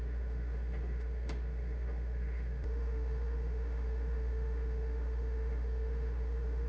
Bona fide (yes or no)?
no